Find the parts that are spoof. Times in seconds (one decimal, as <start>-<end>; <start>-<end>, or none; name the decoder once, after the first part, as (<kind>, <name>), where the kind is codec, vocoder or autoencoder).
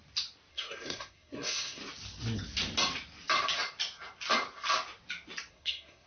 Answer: 0.5-1.8 (codec, SNAC); 5.5-6.1